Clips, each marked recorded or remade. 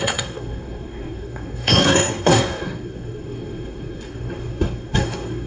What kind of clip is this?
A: remade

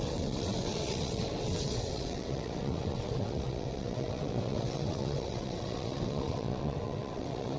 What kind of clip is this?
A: remade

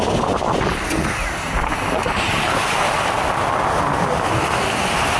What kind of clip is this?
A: recorded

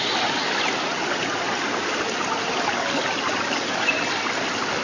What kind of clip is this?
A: recorded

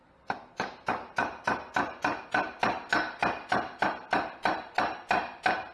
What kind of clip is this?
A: recorded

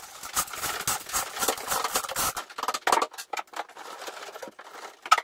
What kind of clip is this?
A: recorded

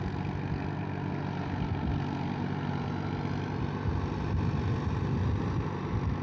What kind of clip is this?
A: recorded